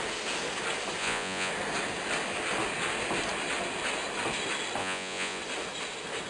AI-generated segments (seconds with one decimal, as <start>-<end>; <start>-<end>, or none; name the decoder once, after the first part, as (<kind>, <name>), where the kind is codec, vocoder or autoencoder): 1.0-1.5 (vocoder, Vocos); 4.8-5.4